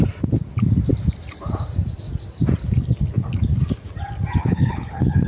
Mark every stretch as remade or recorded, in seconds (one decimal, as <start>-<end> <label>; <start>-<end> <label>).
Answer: 0.0-4.4 recorded; 4.4-5.3 remade